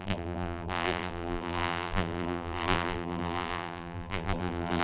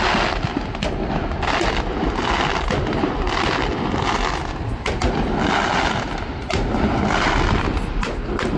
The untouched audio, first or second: second